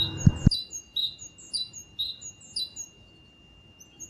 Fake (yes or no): no